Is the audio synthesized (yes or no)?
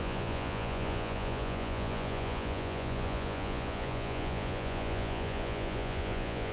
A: yes